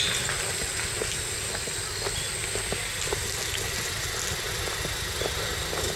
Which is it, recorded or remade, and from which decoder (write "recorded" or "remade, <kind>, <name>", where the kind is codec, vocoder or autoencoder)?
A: recorded